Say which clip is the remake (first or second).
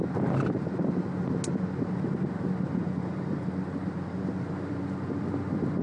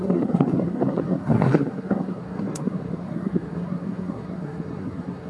second